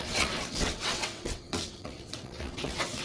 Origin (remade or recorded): remade